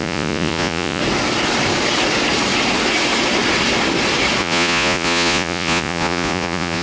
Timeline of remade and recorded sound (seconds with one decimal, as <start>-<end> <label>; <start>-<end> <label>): 0.0-1.0 remade; 1.0-4.4 recorded; 4.4-6.8 remade